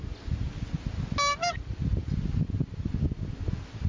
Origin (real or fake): real